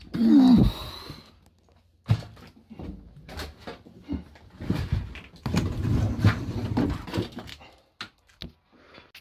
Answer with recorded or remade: recorded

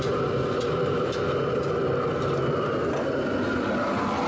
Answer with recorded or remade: recorded